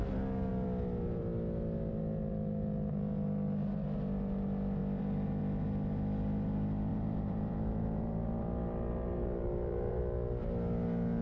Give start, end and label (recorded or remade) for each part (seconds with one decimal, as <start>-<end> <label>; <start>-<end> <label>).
0.0-6.9 recorded; 6.9-10.0 remade; 10.0-11.2 recorded